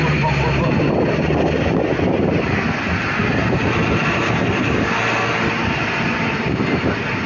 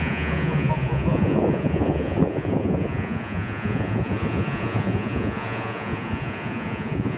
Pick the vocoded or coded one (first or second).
second